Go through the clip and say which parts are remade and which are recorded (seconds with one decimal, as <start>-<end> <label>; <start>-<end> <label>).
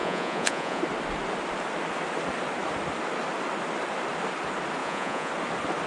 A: 0.0-0.8 remade; 0.8-4.8 recorded; 4.8-5.3 remade; 5.3-5.9 recorded